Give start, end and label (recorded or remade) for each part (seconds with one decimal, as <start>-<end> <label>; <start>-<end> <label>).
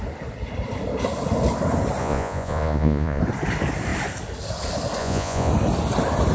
0.0-2.0 recorded; 2.0-3.2 remade; 3.2-5.0 recorded; 5.0-5.5 remade; 5.5-6.3 recorded